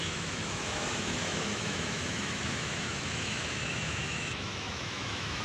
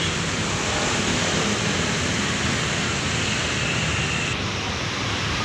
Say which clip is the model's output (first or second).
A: first